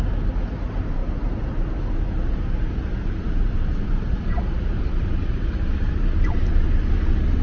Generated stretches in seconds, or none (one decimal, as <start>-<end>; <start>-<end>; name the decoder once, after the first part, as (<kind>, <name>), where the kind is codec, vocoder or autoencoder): 0.0-7.4 (vocoder, BigVGAN v2)